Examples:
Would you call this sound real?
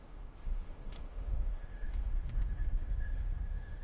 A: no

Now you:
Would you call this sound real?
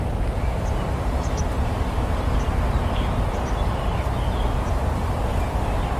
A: yes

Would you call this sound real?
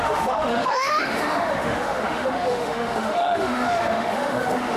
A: no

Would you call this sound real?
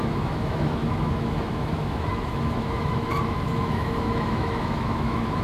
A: no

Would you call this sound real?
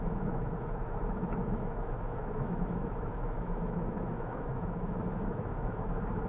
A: no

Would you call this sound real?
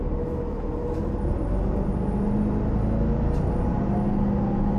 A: yes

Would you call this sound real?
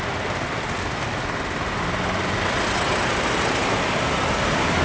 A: yes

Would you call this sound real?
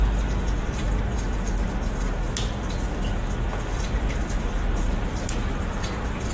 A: yes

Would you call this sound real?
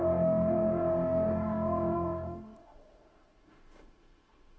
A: no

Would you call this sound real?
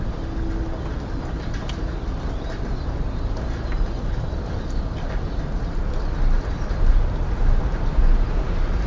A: yes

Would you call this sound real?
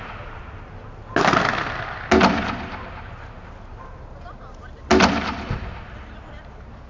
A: yes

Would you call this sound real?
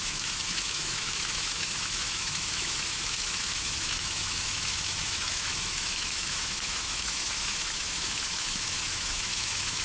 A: no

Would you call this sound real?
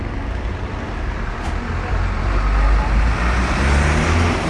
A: yes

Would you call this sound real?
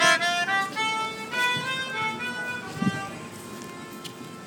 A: yes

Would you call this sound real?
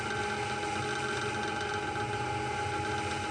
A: yes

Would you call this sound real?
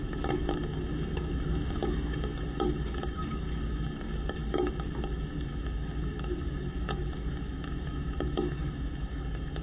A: no